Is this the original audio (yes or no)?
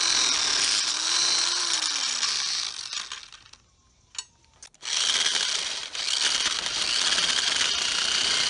yes